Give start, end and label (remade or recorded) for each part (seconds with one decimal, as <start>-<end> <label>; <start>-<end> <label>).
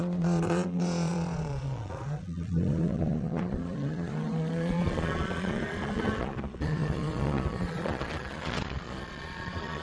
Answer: 0.0-9.8 remade